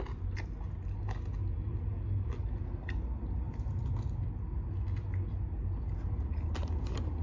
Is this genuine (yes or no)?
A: yes